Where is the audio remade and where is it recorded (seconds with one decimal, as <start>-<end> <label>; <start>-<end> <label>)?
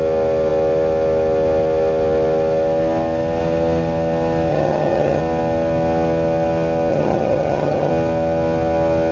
0.0-4.5 recorded; 4.5-5.2 remade; 5.2-6.9 recorded; 6.9-7.9 remade; 7.9-9.1 recorded